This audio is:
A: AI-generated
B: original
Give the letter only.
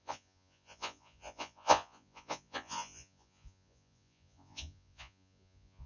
A